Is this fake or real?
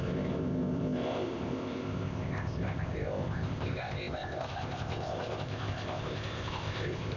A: fake